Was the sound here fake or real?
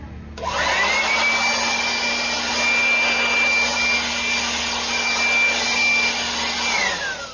real